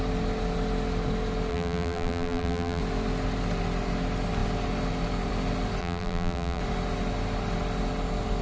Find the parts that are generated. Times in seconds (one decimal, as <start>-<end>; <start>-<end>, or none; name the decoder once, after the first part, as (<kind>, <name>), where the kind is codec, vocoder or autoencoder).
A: 1.5-2.8 (vocoder, BigVGAN v2); 5.8-6.6